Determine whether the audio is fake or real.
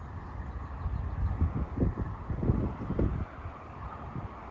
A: real